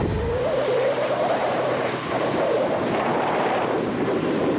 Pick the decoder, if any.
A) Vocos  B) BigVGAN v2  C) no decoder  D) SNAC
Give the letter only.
B